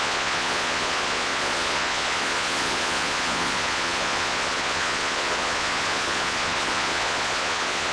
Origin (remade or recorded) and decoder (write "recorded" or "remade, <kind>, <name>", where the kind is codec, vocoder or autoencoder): remade, vocoder, Vocos